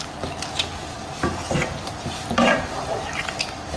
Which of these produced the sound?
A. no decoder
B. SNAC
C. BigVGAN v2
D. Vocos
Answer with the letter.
A